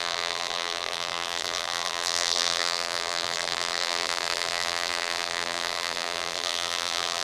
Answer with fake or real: fake